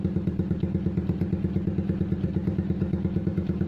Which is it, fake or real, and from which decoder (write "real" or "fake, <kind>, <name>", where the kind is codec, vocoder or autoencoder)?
real